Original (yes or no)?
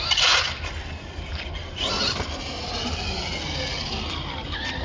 yes